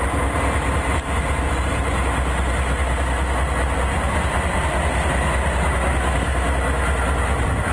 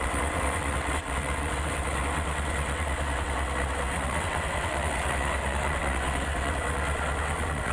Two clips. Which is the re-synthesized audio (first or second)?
second